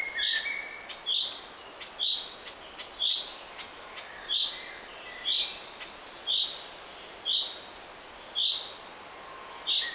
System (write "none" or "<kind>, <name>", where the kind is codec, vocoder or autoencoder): none